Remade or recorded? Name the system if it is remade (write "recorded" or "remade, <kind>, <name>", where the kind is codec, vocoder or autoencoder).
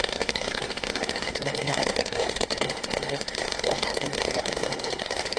remade, codec, SNAC